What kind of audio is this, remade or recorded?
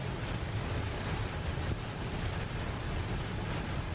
remade